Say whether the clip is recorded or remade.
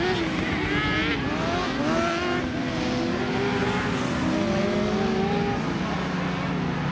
recorded